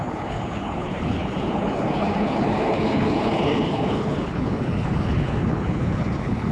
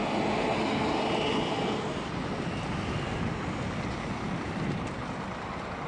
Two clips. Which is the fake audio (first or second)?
first